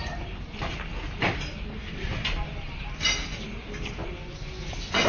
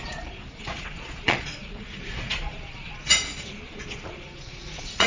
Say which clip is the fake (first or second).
second